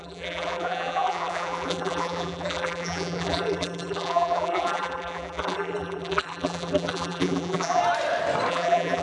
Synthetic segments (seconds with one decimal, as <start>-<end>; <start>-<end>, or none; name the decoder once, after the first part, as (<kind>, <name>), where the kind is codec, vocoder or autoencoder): 0.0-7.8 (vocoder, BigVGAN v2); 8.5-9.0